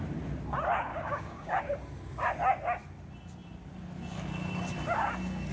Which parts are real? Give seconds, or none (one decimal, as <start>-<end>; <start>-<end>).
0.0-0.9; 1.6-5.5